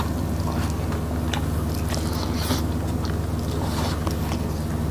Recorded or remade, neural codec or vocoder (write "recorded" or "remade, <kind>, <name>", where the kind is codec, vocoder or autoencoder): recorded